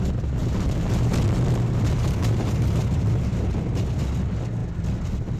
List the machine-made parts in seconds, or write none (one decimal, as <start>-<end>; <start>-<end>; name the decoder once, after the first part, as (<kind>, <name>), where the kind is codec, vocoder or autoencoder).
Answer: 0.4-3.6 (vocoder, BigVGAN v2)